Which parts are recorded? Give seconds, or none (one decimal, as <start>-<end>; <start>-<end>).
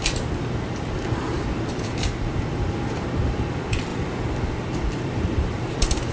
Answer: none